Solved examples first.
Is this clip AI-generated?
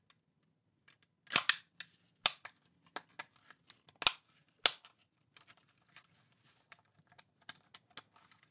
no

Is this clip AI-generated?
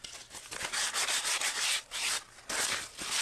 no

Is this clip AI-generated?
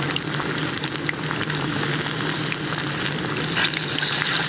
no